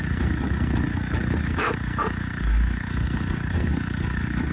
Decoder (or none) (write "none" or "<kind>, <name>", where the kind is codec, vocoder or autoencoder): codec, SNAC